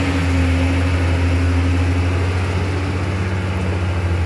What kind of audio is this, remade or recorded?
recorded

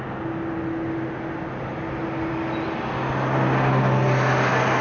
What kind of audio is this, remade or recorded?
recorded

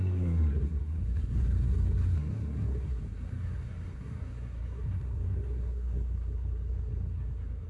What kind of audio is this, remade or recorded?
remade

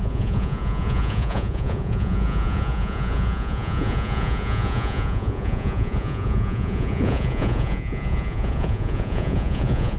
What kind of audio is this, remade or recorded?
remade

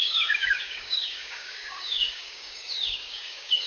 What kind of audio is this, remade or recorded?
remade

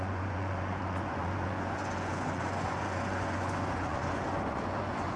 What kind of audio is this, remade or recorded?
remade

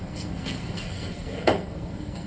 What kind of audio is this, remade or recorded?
remade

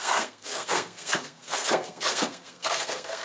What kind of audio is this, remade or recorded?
remade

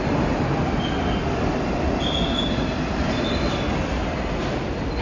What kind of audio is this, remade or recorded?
recorded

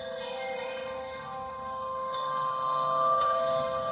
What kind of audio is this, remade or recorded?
remade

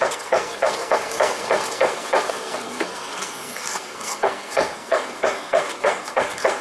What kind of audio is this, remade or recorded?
remade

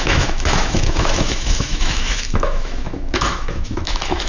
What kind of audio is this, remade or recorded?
remade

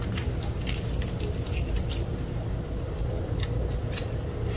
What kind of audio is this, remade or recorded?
recorded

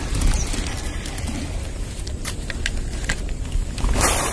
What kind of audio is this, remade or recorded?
recorded